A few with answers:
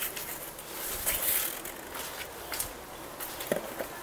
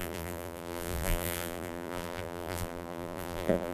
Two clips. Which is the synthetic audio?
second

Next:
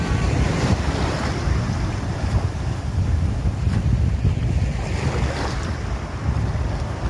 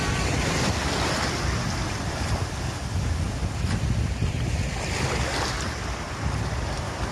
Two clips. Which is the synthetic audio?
first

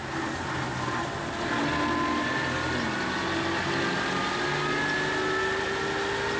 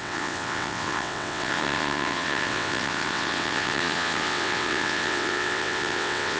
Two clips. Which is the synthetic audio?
second